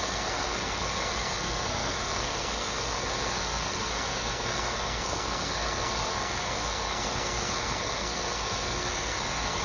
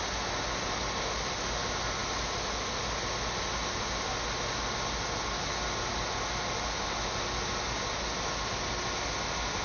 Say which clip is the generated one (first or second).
first